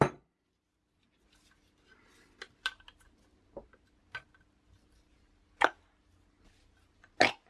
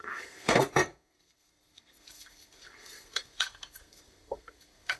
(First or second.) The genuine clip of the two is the first